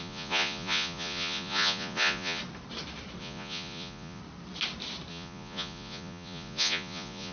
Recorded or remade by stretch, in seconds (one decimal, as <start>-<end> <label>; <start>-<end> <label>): 0.0-2.4 remade; 2.4-3.2 recorded; 3.2-4.2 remade; 4.2-5.1 recorded; 5.1-7.3 remade